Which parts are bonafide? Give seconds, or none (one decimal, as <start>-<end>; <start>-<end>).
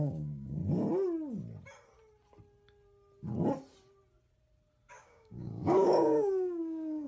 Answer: 0.6-4.9